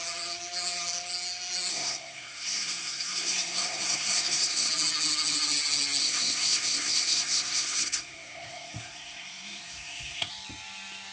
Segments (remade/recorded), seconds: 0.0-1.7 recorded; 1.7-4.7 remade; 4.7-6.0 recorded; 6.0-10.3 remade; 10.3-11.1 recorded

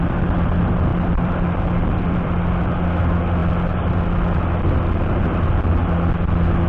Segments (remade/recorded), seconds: 0.0-0.9 recorded; 0.9-2.4 remade; 2.4-6.7 recorded